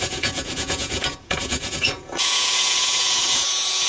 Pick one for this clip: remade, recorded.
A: remade